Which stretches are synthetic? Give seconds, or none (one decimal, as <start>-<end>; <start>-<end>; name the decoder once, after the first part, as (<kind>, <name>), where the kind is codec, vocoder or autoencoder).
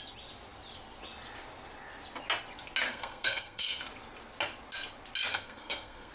2.9-3.8 (codec, SNAC); 5.3-6.1